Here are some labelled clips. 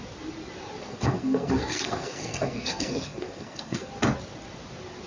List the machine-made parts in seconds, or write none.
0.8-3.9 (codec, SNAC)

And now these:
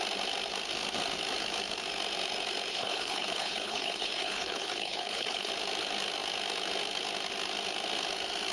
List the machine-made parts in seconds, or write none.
2.7-5.5 (codec, HILCodec)

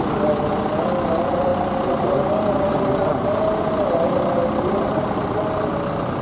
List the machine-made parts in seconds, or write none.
none